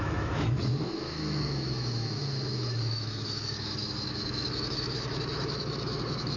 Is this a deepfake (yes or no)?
yes